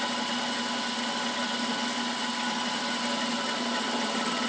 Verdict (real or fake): real